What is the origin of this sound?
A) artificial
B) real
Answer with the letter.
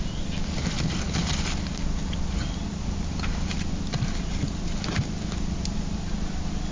B